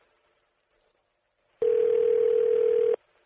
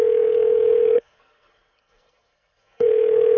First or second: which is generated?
second